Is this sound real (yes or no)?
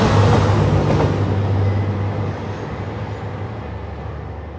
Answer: yes